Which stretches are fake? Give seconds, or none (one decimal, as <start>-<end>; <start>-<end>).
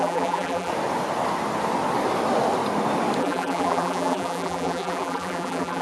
0.0-0.7; 3.2-5.8